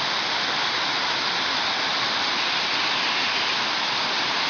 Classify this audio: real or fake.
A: real